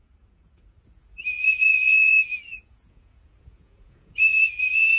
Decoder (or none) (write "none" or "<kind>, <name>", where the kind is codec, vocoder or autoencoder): vocoder, Vocos